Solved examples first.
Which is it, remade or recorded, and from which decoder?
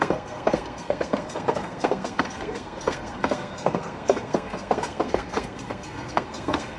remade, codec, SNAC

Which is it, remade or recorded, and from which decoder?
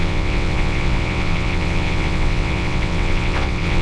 remade, vocoder, WaveNeXt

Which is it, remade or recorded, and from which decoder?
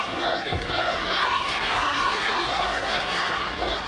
remade, codec, SNAC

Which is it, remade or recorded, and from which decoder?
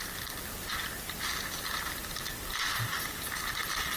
recorded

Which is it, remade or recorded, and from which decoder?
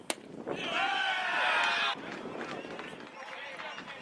recorded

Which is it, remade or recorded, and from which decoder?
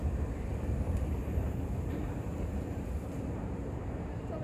remade, vocoder, BigVGAN v2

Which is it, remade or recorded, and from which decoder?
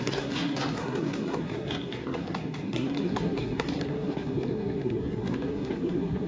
remade, codec, SNAC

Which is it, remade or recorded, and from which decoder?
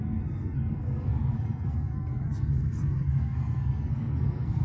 remade, codec, SNAC